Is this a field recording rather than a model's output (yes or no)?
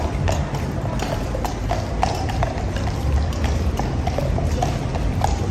no